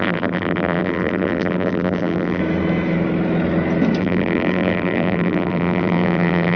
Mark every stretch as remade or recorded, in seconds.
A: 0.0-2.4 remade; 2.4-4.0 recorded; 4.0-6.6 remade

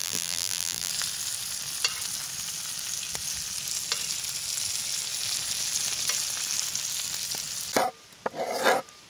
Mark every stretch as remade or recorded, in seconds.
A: 0.0-0.9 remade; 0.9-9.1 recorded

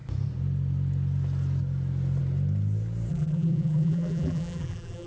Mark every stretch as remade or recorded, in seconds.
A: 0.0-3.1 recorded; 3.1-5.1 remade

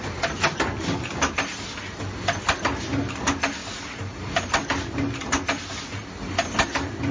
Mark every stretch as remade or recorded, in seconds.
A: 0.0-3.6 recorded; 3.6-4.5 remade; 4.5-7.1 recorded